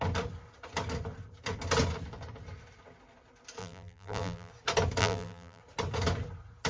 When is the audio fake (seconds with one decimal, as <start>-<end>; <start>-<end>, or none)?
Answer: 3.6-4.5; 5.0-5.6